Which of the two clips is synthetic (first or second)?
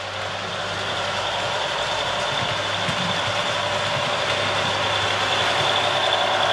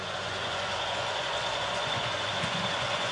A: second